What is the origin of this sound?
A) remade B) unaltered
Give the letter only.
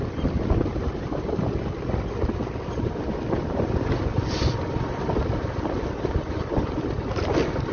B